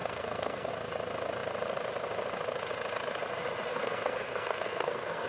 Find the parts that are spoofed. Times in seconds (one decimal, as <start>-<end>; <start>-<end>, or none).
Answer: 0.0-0.7; 3.7-5.3